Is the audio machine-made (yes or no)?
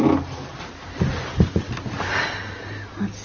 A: no